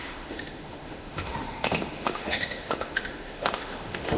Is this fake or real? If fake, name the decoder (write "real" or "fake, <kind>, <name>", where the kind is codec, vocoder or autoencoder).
fake, autoencoder, DAC-VAE